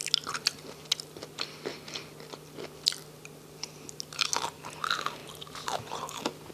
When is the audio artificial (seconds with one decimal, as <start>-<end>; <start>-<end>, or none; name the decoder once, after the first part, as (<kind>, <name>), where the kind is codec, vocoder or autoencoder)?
none